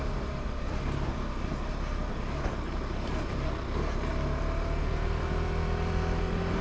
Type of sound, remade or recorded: recorded